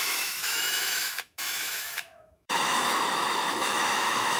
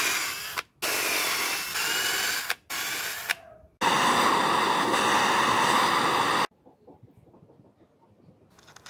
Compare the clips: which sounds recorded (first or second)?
second